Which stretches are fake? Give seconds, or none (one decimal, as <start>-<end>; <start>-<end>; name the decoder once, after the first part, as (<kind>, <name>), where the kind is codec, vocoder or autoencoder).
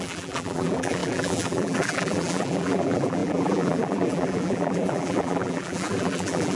0.0-6.5 (vocoder, BigVGAN v2)